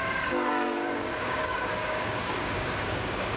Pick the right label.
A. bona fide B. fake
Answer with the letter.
B